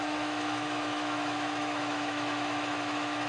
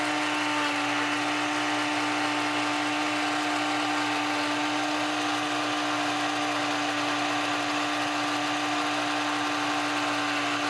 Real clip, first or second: second